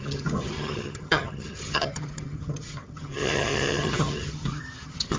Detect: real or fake fake